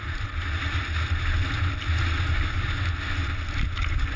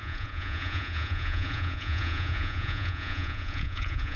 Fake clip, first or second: second